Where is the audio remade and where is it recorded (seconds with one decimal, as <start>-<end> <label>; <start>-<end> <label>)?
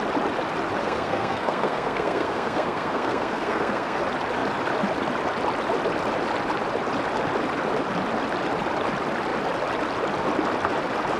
0.0-0.8 recorded; 0.8-4.0 remade; 4.0-11.2 recorded